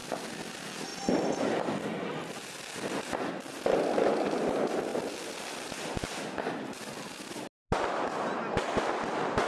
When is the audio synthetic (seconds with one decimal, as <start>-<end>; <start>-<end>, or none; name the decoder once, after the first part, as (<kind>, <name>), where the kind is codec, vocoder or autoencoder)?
none